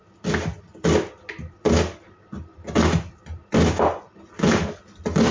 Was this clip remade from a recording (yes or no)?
no